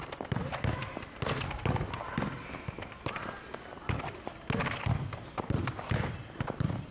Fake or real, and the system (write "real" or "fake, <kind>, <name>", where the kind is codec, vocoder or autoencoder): real